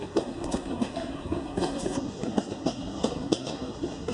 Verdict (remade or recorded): remade